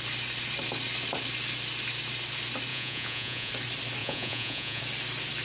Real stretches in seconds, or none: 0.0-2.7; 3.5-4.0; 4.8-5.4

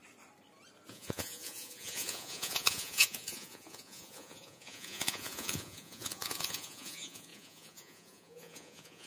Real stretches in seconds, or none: 0.0-0.9

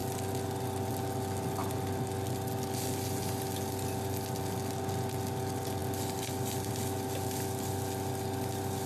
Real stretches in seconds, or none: 0.0-8.9

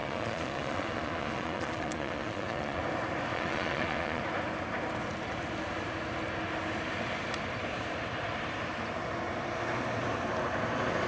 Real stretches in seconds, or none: 2.8-3.3; 4.2-11.1

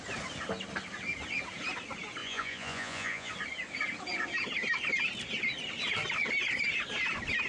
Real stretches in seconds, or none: 0.0-2.2; 3.3-7.5

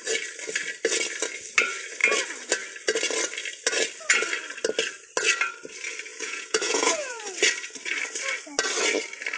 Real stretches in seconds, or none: 0.0-6.1; 7.2-9.4

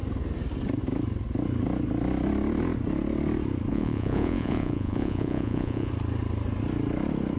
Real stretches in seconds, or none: 0.0-3.7; 5.9-7.4

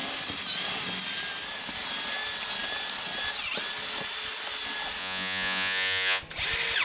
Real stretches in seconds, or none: 0.0-5.0; 6.2-6.8